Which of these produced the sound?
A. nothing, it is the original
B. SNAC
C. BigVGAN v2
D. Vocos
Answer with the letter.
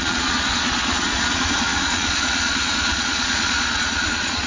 D